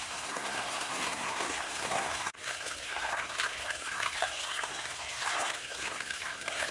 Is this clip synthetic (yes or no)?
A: yes